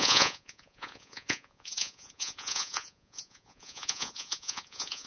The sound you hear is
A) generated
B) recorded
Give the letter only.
A